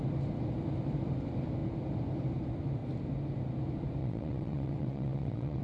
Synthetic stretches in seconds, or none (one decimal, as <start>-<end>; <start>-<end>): 4.0-5.6